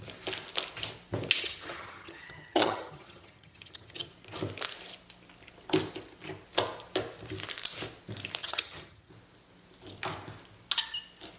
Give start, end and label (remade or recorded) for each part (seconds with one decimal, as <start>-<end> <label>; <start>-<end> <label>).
0.0-1.4 recorded; 1.4-4.1 remade; 4.1-8.4 recorded; 8.4-9.1 remade; 9.1-11.4 recorded